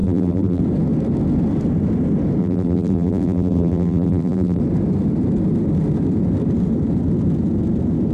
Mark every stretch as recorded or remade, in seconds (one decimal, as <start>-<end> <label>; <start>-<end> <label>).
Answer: 0.0-0.6 remade; 0.6-2.4 recorded; 2.4-4.6 remade; 4.6-8.1 recorded